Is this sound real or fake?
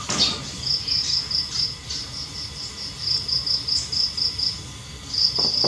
real